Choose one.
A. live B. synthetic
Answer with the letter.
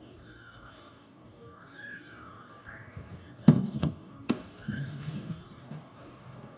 B